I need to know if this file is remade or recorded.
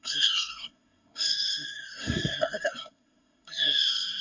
remade